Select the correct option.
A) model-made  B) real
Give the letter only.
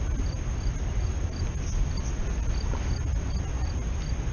B